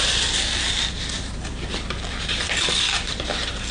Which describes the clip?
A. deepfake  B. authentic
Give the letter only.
A